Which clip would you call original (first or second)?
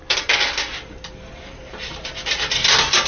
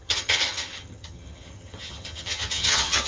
first